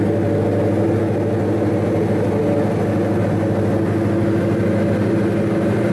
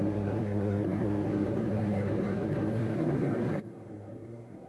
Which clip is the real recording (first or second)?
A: first